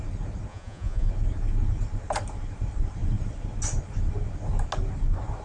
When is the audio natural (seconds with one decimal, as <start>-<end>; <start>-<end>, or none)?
0.0-0.5; 1.1-5.4